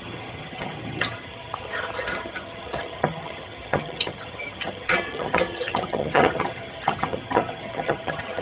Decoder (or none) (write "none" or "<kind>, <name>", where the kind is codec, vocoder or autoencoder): vocoder, HiFi-GAN